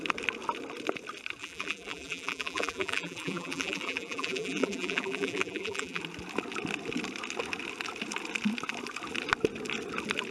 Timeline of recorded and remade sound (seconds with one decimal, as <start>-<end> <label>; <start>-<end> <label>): 0.0-1.4 recorded; 1.4-6.0 remade; 6.0-10.3 recorded